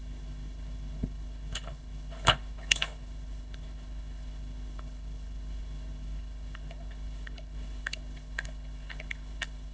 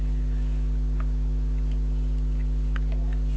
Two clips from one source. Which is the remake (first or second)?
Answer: first